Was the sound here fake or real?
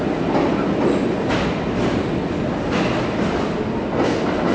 real